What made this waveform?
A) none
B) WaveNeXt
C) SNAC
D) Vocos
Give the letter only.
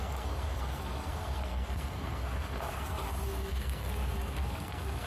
C